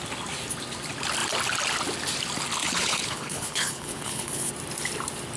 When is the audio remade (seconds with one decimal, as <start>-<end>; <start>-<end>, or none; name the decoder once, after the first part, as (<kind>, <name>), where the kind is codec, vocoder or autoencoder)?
2.6-4.5 (codec, HILCodec)